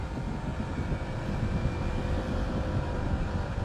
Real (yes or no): yes